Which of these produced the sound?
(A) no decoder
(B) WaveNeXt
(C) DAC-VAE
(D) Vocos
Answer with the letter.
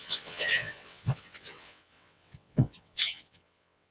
B